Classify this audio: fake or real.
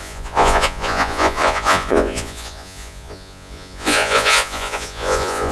fake